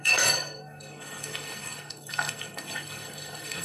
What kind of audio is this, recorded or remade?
remade